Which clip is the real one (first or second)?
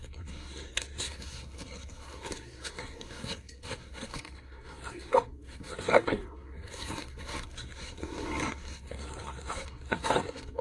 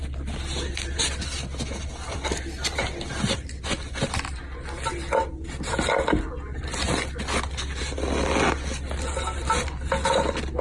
second